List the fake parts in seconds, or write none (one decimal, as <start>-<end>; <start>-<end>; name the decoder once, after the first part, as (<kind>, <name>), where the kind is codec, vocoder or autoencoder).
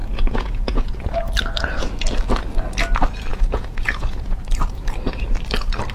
0.0-1.3 (vocoder, Vocos); 3.3-4.4